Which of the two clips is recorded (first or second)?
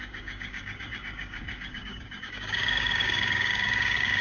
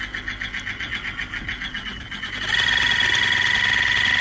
second